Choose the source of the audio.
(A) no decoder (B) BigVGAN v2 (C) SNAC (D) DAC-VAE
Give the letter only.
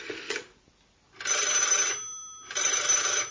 A